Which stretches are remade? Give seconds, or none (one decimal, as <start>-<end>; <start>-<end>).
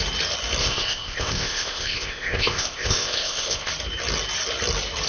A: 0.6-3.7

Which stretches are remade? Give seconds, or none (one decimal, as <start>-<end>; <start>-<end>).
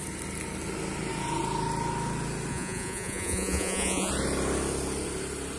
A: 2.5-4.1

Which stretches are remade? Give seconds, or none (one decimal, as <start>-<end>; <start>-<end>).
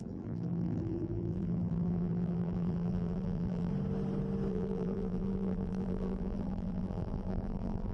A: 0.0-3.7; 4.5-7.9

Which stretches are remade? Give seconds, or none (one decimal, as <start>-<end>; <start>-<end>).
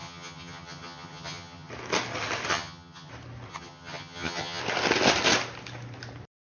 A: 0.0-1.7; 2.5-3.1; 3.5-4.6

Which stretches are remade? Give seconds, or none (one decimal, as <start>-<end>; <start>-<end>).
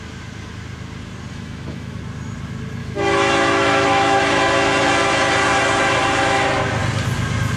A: 1.3-2.0; 2.8-4.2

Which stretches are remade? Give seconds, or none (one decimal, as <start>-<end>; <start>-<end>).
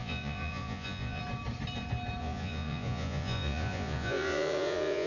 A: 0.0-1.2; 2.2-5.1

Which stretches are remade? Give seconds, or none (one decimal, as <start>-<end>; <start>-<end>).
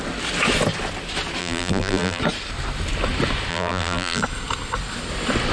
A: 1.4-2.2; 3.5-4.2